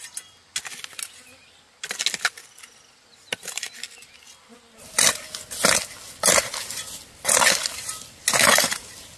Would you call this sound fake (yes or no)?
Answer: no